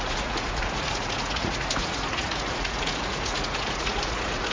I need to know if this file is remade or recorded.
remade